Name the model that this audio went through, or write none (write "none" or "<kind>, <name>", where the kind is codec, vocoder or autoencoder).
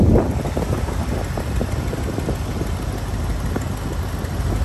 none